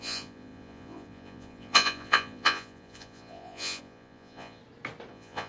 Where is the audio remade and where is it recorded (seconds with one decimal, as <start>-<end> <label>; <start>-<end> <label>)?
0.0-4.6 remade; 4.6-5.1 recorded; 5.1-5.5 remade